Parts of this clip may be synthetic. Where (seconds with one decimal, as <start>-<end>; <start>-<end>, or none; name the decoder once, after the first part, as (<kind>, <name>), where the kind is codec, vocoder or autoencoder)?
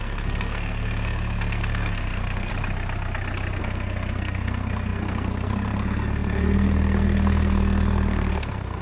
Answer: 0.0-2.5 (codec, SNAC); 3.6-8.8